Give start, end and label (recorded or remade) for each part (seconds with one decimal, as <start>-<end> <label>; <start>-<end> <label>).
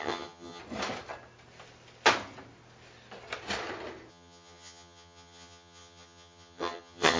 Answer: 0.0-0.6 remade; 0.6-4.1 recorded; 4.1-7.2 remade